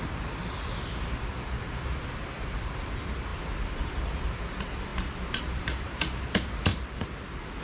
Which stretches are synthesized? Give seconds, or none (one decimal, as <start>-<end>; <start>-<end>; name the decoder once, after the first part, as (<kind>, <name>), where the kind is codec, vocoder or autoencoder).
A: 0.0-3.3 (vocoder, BigVGAN v2); 4.5-4.9; 5.4-6.7